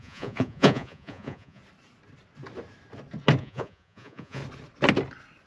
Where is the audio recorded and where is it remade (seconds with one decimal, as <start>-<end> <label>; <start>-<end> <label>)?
0.0-1.6 remade; 1.6-3.4 recorded; 3.4-4.4 remade; 4.4-5.5 recorded